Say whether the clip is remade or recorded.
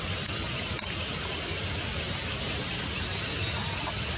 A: recorded